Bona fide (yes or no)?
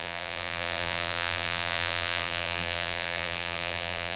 no